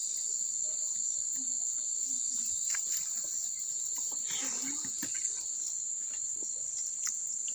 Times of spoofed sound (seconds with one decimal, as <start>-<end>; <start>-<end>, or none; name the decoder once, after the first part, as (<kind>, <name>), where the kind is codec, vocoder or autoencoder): none